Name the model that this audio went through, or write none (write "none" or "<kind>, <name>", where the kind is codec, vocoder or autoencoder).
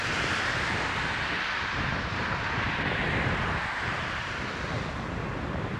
vocoder, BigVGAN v2